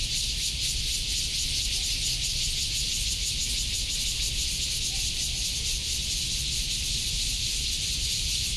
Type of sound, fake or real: real